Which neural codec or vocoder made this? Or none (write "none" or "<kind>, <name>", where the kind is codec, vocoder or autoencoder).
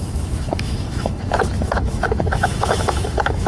autoencoder, DAC-VAE